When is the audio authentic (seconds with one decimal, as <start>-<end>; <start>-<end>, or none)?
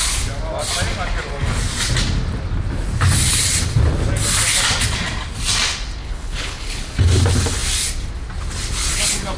0.0-6.0; 6.8-9.4